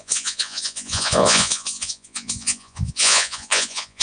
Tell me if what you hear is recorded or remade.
remade